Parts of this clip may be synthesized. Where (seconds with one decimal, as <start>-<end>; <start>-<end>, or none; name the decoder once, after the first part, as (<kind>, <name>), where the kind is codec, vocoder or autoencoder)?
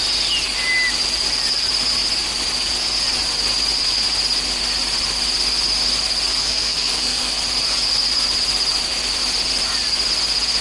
6.4-7.3 (codec, SNAC)